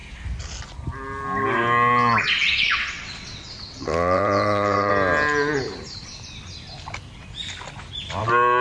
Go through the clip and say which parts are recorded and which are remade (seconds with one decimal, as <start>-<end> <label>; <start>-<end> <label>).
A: 0.0-2.2 recorded; 2.2-4.9 remade; 4.9-8.6 recorded